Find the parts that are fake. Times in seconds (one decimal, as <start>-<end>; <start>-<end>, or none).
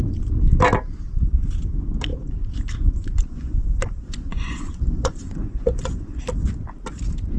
2.1-6.2